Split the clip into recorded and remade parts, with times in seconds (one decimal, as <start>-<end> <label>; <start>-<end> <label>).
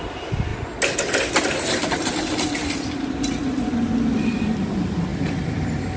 0.0-6.0 recorded